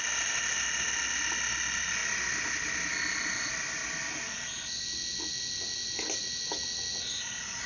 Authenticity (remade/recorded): recorded